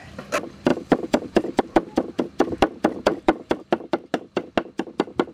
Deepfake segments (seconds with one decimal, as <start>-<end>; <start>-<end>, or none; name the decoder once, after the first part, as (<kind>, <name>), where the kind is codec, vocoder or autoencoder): 0.7-1.6 (vocoder, BigVGAN v2); 3.1-3.7